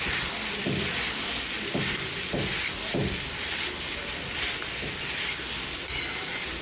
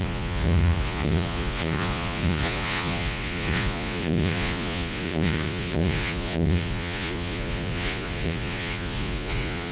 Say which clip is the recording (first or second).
first